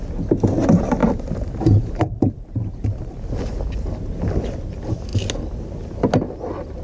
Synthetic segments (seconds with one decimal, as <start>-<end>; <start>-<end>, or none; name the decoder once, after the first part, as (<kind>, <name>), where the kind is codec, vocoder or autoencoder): 1.0-3.2 (vocoder, BigVGAN v2)